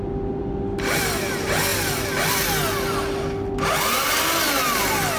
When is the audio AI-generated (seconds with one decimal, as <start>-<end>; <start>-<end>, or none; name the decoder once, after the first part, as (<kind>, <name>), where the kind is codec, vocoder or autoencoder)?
none